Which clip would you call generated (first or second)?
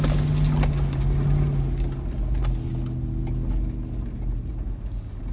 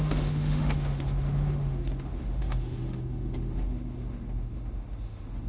second